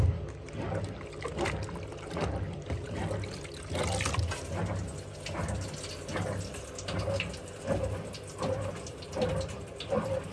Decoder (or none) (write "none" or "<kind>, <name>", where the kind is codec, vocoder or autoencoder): none